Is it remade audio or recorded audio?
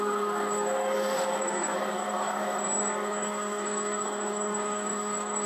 remade